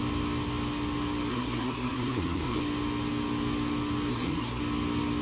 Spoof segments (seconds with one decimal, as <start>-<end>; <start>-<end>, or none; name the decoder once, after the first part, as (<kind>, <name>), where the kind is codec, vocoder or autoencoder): 1.3-2.6 (codec, SNAC); 4.1-4.6